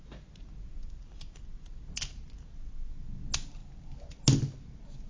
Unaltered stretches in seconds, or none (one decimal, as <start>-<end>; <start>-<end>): 0.0-5.1